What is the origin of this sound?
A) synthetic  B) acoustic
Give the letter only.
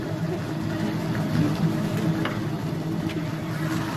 B